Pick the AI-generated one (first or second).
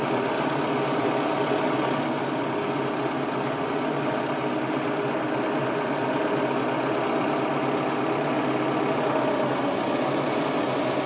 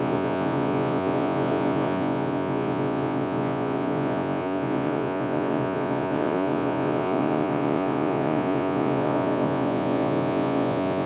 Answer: second